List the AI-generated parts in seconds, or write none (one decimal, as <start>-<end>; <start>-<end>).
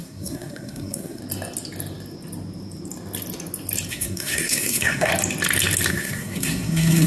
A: 0.0-1.2; 3.9-5.1; 5.9-7.1